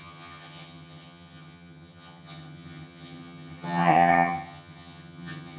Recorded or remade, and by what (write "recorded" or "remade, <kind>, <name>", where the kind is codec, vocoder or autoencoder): remade, vocoder, HiFi-GAN